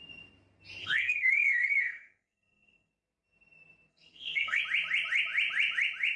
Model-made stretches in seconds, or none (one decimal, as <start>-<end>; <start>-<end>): 0.8-2.9; 3.9-4.6